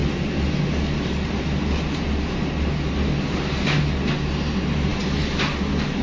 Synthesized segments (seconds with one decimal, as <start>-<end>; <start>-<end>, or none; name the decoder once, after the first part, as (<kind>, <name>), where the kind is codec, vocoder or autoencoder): none